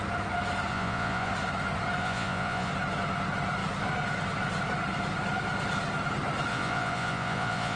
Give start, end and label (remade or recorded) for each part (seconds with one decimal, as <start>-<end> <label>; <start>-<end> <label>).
0.0-0.7 recorded; 0.7-1.3 remade; 1.3-2.0 recorded; 2.0-2.7 remade; 2.7-6.5 recorded; 6.5-7.8 remade